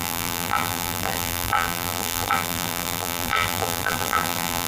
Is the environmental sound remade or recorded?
remade